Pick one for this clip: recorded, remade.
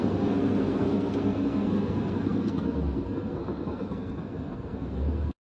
remade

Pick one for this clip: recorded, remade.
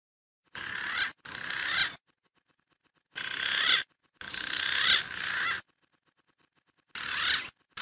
recorded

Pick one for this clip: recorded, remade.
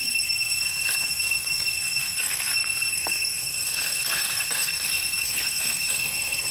remade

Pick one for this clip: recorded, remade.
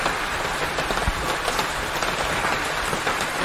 recorded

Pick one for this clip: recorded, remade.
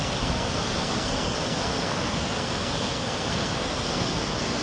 remade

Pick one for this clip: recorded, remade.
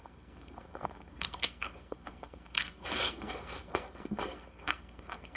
remade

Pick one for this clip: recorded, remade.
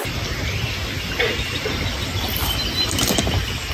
recorded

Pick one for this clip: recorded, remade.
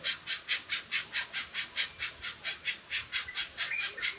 recorded